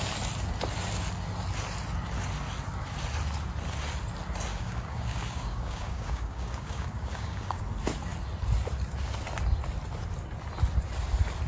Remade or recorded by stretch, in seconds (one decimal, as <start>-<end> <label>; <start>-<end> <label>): 0.0-4.5 recorded; 4.5-7.6 remade; 7.6-11.5 recorded